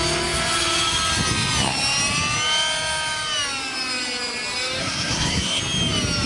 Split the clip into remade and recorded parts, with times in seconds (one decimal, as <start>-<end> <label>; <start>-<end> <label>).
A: 0.0-4.8 recorded; 4.8-5.6 remade; 5.6-6.3 recorded